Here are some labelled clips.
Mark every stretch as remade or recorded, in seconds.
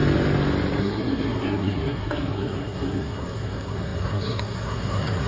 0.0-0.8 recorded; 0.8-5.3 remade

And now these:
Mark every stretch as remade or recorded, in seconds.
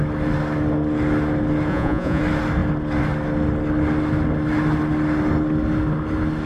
0.0-1.7 recorded; 1.7-2.2 remade; 2.2-6.5 recorded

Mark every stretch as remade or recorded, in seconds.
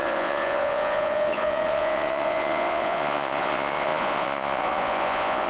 0.0-5.5 remade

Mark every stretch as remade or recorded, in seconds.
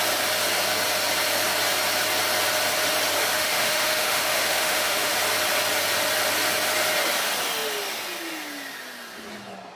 0.0-3.3 recorded; 3.3-5.2 remade; 5.2-9.8 recorded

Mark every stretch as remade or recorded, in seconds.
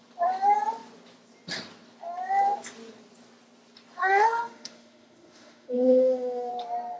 0.0-4.0 recorded; 4.0-6.5 remade; 6.5-7.0 recorded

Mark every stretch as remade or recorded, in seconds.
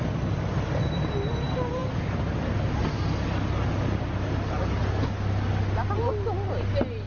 0.0-7.1 recorded